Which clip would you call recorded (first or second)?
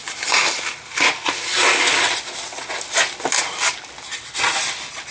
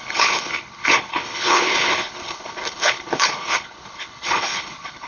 first